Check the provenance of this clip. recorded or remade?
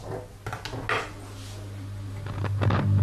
recorded